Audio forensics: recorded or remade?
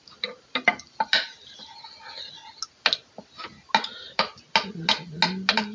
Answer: recorded